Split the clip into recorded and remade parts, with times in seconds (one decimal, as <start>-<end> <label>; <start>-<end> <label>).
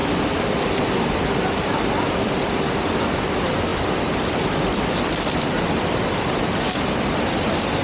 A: 0.0-7.8 remade